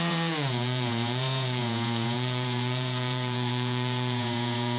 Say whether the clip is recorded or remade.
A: remade